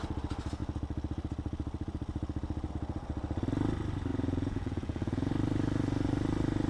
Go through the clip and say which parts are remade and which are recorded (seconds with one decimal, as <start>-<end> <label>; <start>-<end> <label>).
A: 0.0-4.1 recorded; 4.1-5.3 remade; 5.3-6.7 recorded